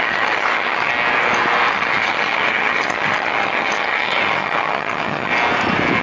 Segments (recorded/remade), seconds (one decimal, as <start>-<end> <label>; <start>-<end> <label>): 0.0-0.9 remade; 0.9-1.7 recorded; 1.7-5.3 remade; 5.3-6.0 recorded